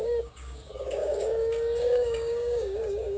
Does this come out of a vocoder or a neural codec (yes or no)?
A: yes